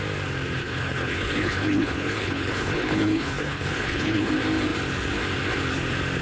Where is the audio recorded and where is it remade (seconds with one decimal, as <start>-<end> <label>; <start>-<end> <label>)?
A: 0.0-0.6 recorded; 0.6-4.3 remade; 4.3-6.2 recorded